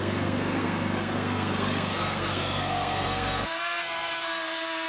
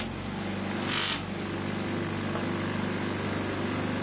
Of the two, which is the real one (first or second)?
second